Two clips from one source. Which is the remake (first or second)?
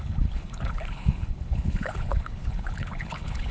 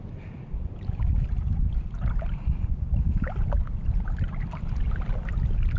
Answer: first